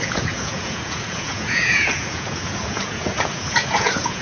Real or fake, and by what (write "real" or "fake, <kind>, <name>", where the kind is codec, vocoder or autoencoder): fake, vocoder, Vocos